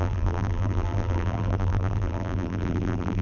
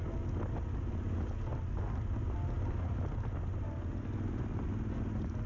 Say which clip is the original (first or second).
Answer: second